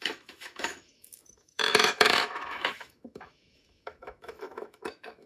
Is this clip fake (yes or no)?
yes